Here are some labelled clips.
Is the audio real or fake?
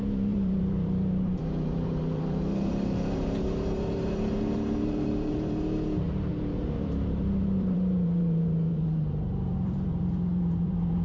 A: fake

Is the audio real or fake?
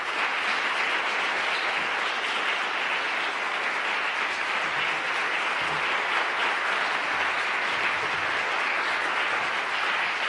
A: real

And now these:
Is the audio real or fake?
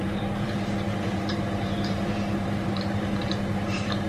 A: fake